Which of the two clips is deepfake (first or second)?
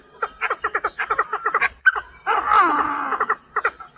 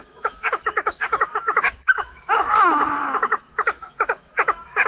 second